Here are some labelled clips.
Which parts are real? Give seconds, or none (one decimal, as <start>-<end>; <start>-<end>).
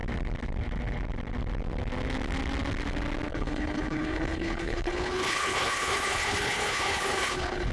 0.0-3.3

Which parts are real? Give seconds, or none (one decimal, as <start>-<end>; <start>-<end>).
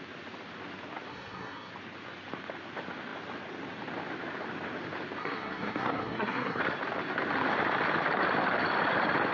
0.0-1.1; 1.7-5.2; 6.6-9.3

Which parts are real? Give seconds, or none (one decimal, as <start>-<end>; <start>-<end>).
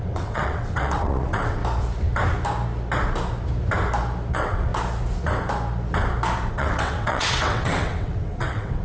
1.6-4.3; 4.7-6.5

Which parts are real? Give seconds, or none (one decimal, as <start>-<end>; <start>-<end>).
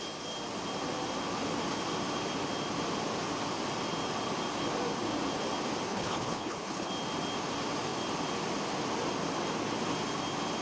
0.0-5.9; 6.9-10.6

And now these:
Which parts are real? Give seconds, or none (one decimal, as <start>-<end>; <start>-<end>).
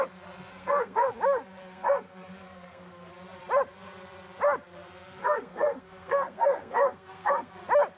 0.0-0.5; 1.1-1.6; 3.1-5.2; 7.5-8.0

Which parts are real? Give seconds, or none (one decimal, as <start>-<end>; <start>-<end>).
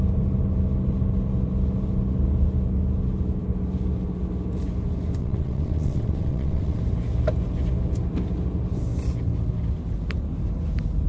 0.0-5.2; 6.8-11.1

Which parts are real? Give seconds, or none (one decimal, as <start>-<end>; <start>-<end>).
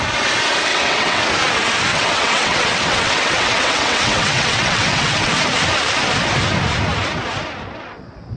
0.0-0.7; 1.2-1.9; 5.4-8.4